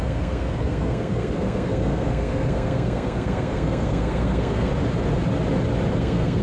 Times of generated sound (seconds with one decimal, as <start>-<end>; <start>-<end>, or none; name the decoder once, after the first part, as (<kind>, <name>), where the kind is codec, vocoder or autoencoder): 0.0-4.7 (codec, SNAC); 6.0-6.4